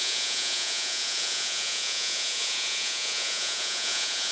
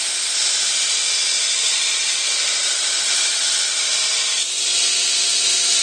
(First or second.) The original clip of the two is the second